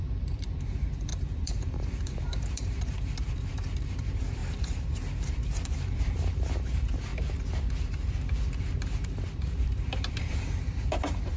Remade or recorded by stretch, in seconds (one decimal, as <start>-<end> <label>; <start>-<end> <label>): 0.0-7.1 remade; 7.1-8.6 recorded; 8.6-11.4 remade